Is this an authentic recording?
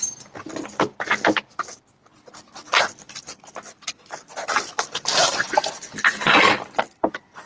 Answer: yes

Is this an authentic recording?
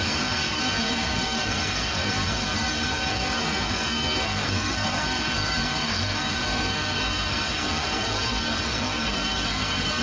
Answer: no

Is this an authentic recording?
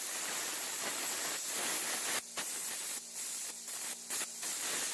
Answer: yes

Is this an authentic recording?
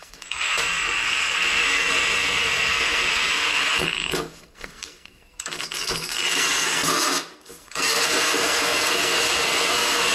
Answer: no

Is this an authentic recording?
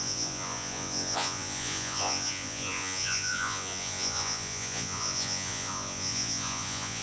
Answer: no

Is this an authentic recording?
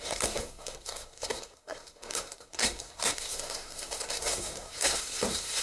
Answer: no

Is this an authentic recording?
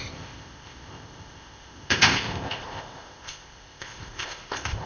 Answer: no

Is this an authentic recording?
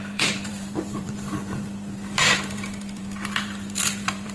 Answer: no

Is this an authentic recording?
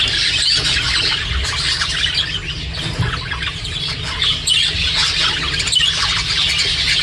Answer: yes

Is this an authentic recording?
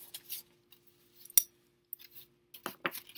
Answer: yes